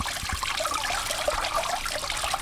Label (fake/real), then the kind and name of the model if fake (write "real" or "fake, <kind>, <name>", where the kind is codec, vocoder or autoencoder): real